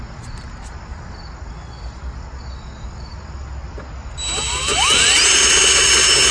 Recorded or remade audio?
recorded